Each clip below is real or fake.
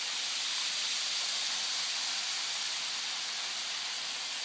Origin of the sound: real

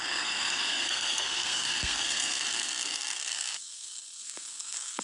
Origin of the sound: fake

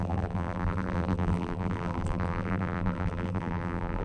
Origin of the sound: fake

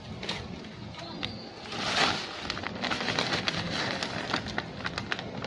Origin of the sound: real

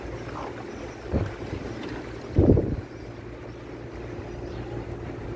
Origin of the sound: real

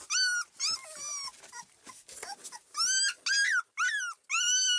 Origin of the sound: real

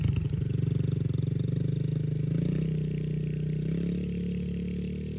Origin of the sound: real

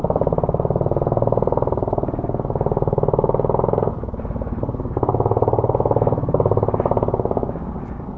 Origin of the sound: real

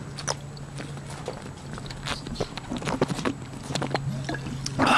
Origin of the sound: real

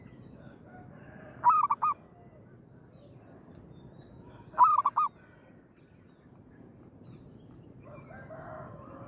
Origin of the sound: real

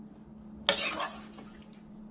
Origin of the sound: real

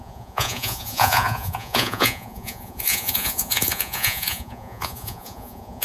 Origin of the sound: fake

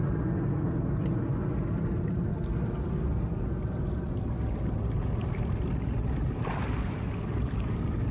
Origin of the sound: real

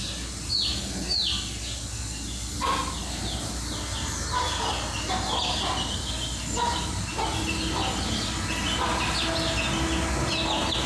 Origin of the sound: real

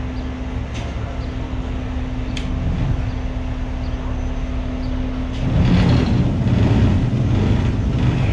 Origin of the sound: real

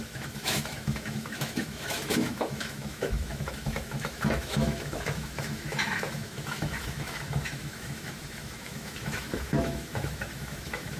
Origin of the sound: fake